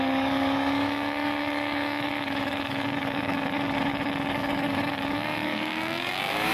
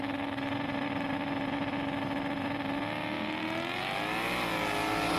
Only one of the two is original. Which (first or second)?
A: second